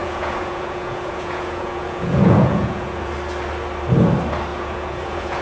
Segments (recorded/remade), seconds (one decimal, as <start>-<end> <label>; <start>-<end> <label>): 0.0-3.1 remade; 3.1-4.5 recorded; 4.5-5.4 remade